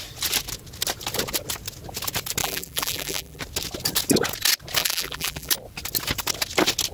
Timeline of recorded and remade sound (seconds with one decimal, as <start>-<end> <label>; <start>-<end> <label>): 0.0-2.4 recorded; 2.4-3.4 remade; 3.4-4.8 recorded; 4.8-5.5 remade; 5.5-6.9 recorded